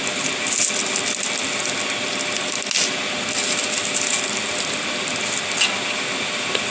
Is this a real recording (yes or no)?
yes